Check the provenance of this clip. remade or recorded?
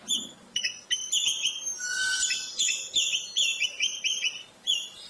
recorded